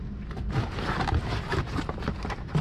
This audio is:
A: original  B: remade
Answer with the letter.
A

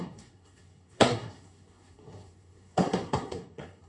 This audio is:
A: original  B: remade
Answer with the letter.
B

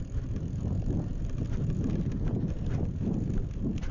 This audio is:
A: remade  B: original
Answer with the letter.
B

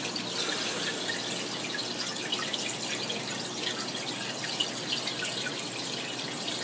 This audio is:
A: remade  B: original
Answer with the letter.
B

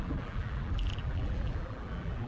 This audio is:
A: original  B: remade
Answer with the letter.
B